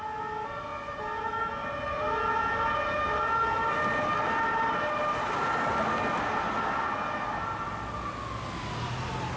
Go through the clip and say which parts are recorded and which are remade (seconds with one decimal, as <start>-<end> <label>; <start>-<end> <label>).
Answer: 0.0-9.4 recorded